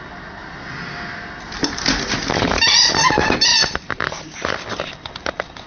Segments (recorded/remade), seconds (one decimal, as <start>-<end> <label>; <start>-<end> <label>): 0.0-5.7 recorded

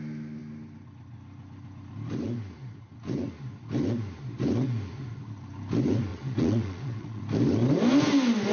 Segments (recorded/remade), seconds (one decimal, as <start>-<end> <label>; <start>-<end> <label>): 0.0-6.1 recorded; 6.1-7.2 remade; 7.2-8.5 recorded

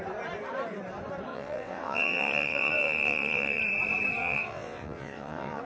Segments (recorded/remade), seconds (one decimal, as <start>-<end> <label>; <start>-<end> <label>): 0.0-1.3 recorded; 1.3-3.6 remade; 3.6-4.2 recorded; 4.2-5.6 remade

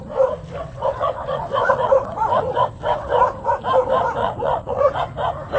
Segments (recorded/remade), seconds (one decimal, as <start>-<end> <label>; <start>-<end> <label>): 0.0-0.6 recorded; 0.6-3.2 remade; 3.2-4.2 recorded; 4.2-5.0 remade; 5.0-5.6 recorded

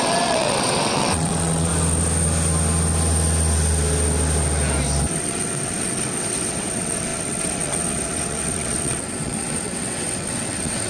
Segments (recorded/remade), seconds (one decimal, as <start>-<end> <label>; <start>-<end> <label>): 0.0-1.7 remade; 1.7-5.1 recorded; 5.1-10.9 remade

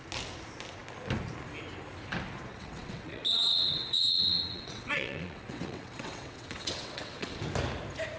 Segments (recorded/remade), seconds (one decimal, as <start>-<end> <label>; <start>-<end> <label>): 0.0-2.5 recorded; 2.5-7.4 remade; 7.4-8.2 recorded

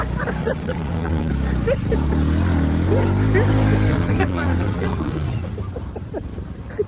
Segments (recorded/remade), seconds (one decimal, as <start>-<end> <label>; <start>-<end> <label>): 0.0-0.4 recorded; 0.4-1.3 remade; 1.3-3.9 recorded; 3.9-5.5 remade; 5.5-6.9 recorded

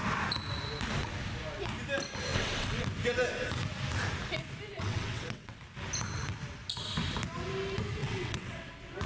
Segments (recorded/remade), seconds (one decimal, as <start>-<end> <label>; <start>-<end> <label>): 0.0-2.3 recorded; 2.3-2.8 remade; 2.8-4.7 recorded; 4.7-5.6 remade; 5.6-8.0 recorded; 8.0-8.7 remade; 8.7-9.1 recorded